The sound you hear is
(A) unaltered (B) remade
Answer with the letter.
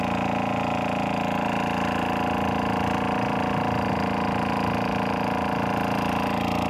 A